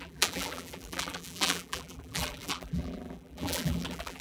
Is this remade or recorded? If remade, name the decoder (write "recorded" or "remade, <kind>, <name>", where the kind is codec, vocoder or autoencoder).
remade, vocoder, BigVGAN v2